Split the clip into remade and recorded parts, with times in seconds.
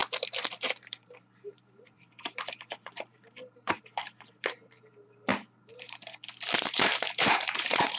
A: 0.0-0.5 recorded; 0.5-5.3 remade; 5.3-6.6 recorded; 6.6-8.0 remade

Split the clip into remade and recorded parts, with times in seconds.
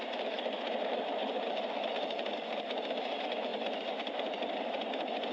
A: 0.0-1.2 recorded; 1.2-2.6 remade; 2.6-5.3 recorded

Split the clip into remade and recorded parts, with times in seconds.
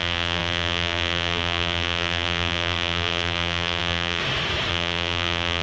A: 0.0-4.2 remade; 4.2-4.7 recorded; 4.7-5.6 remade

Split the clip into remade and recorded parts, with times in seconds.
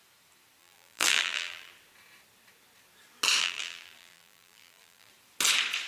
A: 0.0-0.6 recorded; 0.6-1.7 remade; 1.7-3.4 recorded; 3.4-5.1 remade; 5.1-5.9 recorded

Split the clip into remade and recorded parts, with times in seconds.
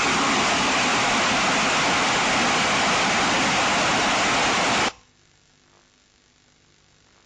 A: 0.0-7.3 recorded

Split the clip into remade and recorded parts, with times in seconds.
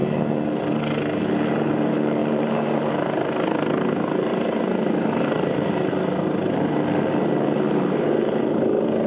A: 0.0-2.2 recorded; 2.2-2.9 remade; 2.9-4.3 recorded; 4.3-5.9 remade; 5.9-9.1 recorded